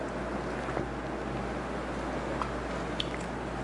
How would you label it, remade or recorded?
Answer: recorded